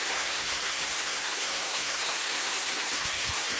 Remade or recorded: remade